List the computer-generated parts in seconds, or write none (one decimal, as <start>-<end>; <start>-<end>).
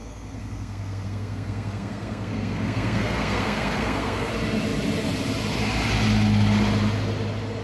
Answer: 0.0-4.3